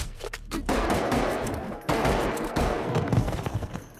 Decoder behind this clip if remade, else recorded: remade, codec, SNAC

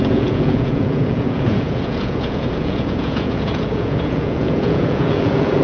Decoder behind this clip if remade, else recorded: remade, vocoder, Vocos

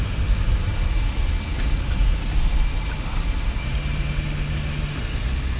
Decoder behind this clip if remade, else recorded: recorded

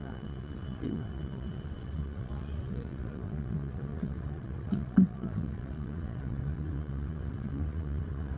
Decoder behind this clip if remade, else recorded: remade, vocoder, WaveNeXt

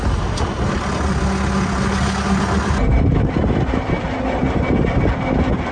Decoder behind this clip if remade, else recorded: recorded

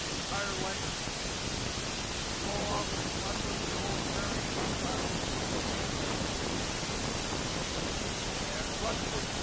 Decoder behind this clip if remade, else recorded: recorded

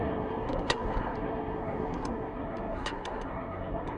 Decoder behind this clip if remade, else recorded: remade, codec, SNAC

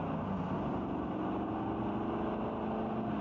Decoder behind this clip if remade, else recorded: recorded